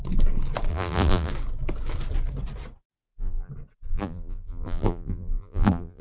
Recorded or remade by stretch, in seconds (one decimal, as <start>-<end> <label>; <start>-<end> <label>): 0.0-0.7 recorded; 0.7-1.3 remade; 1.3-2.9 recorded; 2.9-3.5 remade; 3.5-3.9 recorded; 3.9-6.0 remade